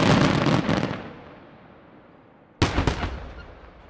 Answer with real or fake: real